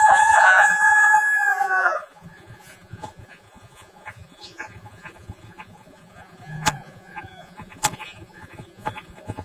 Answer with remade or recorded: remade